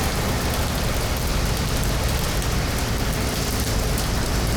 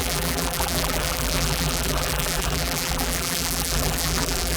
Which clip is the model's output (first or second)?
second